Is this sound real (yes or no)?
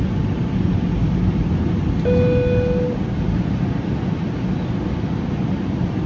yes